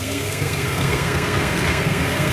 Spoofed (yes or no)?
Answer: yes